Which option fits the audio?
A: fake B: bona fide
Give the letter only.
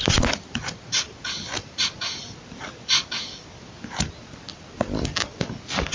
B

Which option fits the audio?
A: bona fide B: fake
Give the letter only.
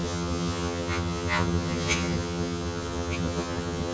B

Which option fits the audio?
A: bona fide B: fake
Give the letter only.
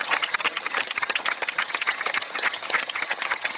B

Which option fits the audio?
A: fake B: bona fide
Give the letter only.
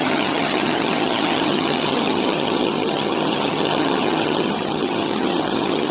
A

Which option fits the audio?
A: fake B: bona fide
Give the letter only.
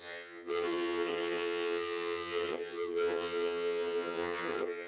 A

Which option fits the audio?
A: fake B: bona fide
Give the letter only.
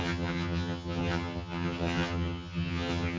A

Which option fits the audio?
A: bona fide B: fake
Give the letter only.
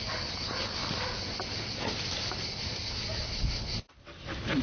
A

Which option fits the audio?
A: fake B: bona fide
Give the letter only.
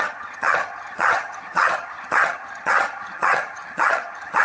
A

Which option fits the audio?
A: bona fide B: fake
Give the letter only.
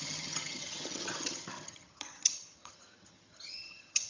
B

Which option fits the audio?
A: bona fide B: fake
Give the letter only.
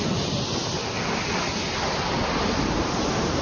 A